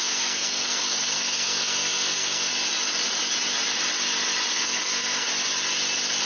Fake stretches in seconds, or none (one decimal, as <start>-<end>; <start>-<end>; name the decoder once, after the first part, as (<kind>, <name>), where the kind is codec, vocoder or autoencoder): 0.0-2.5 (codec, SNAC); 4.5-5.3